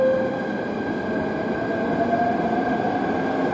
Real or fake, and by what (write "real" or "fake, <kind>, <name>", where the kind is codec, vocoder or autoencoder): fake, vocoder, BigVGAN v2